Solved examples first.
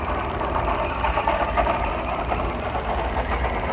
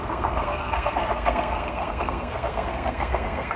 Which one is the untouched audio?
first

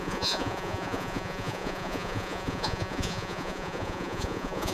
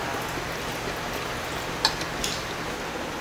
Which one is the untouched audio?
second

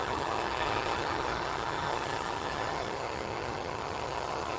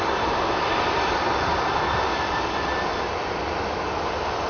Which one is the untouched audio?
second